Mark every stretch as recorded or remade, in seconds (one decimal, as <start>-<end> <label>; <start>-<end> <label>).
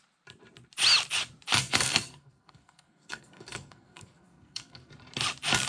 0.0-1.5 recorded; 1.5-4.9 remade; 4.9-5.7 recorded